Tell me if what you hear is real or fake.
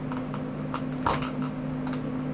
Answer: real